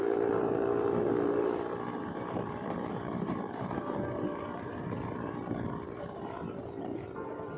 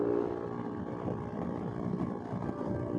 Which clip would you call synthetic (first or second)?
first